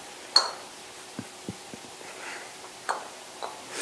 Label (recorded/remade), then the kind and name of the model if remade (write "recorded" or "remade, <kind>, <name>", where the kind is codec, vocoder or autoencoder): recorded